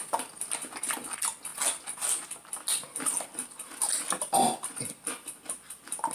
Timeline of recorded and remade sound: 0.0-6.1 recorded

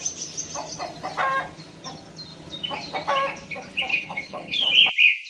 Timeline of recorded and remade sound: 0.0-3.9 recorded; 3.9-4.7 remade; 4.7-5.3 recorded

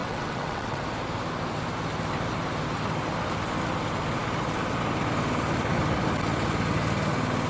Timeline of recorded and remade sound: 0.0-0.8 remade; 0.8-7.5 recorded

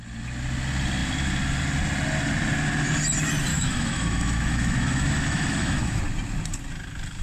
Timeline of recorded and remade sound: 0.0-3.5 recorded; 3.5-6.0 remade; 6.0-7.2 recorded